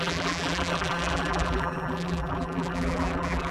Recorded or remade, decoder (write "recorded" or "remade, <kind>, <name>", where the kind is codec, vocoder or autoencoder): remade, vocoder, BigVGAN v2